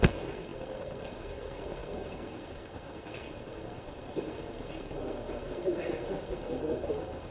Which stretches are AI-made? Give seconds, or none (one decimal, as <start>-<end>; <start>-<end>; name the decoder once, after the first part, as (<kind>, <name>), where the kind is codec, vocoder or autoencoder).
0.0-7.3 (codec, SNAC)